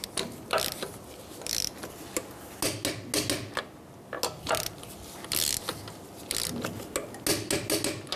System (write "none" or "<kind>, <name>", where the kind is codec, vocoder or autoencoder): none